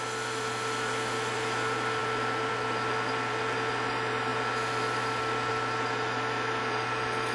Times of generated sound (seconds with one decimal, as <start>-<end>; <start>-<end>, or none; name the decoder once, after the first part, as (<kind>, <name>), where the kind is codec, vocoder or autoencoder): none